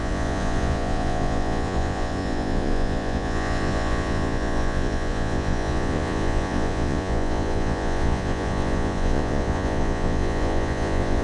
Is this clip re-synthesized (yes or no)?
yes